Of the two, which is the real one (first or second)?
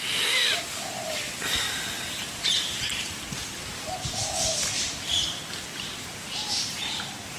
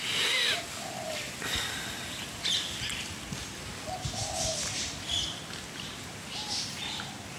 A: second